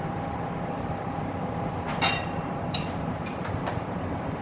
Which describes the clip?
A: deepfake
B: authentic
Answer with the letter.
A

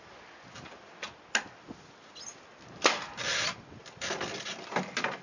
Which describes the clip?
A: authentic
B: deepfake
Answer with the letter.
A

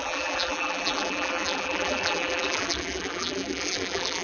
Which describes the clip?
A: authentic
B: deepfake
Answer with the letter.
B